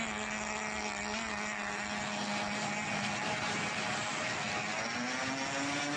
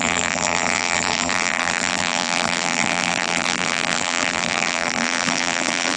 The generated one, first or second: second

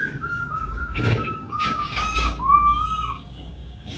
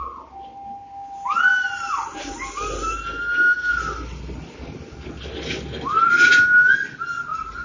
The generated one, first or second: first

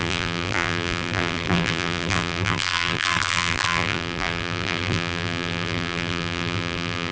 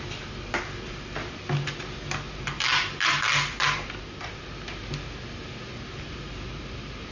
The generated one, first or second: first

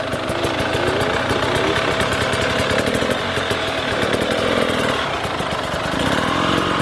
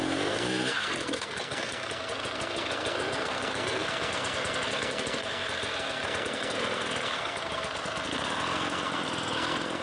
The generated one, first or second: second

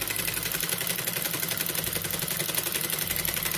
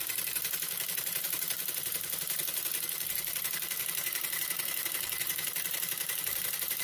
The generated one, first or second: second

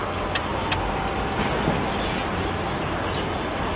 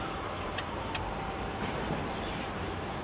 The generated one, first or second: second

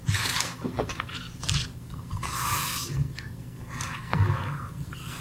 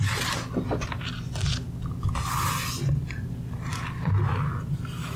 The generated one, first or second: first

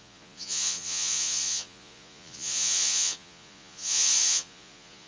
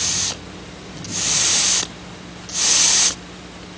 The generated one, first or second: first